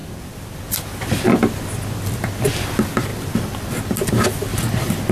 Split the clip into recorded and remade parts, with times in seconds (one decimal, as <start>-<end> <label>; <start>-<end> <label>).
0.0-1.2 remade; 1.2-3.1 recorded; 3.1-3.7 remade; 3.7-5.1 recorded

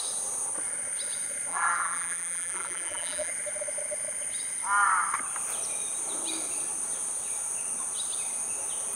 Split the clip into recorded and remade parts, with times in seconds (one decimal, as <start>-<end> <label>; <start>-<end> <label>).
0.0-1.5 recorded; 1.5-3.3 remade; 3.3-9.0 recorded

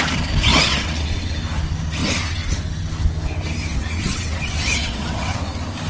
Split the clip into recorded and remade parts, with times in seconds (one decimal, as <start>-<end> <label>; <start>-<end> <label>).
0.0-0.5 recorded; 0.5-1.3 remade; 1.3-3.7 recorded; 3.7-5.4 remade; 5.4-5.9 recorded

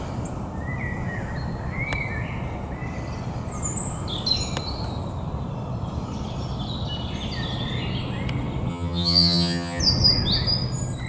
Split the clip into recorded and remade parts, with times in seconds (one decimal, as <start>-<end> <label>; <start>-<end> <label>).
0.0-8.7 recorded; 8.7-9.8 remade; 9.8-11.1 recorded

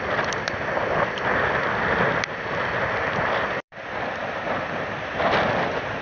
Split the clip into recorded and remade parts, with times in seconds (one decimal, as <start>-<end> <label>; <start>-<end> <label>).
0.0-3.6 recorded; 3.6-5.1 remade; 5.1-6.0 recorded

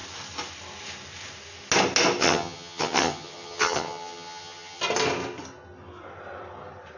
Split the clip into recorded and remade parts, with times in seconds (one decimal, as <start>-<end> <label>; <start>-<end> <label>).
0.0-2.2 recorded; 2.2-4.8 remade; 4.8-7.0 recorded

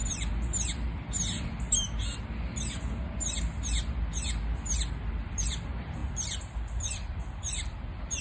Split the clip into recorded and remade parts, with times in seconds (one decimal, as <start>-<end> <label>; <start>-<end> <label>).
0.0-4.9 recorded; 4.9-8.2 remade